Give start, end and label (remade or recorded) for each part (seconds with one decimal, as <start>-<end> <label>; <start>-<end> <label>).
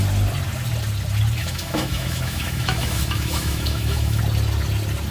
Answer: 0.0-1.4 recorded; 1.4-4.2 remade; 4.2-5.1 recorded